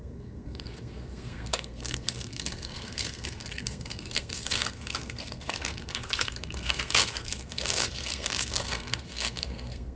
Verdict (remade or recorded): remade